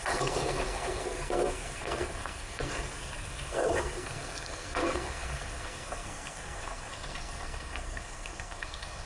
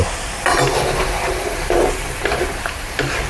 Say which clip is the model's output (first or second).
first